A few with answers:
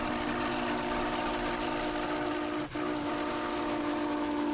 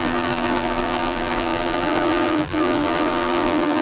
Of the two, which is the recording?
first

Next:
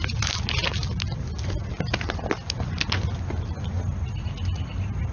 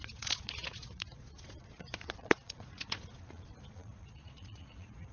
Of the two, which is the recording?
first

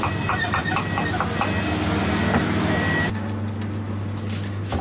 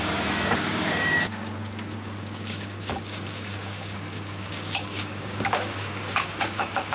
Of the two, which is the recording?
first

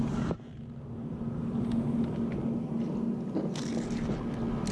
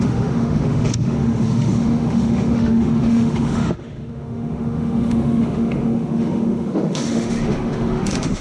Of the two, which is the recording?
first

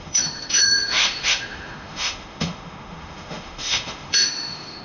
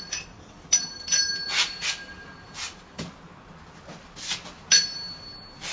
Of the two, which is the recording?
second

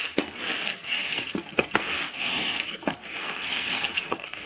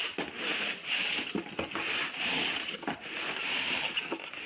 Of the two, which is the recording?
second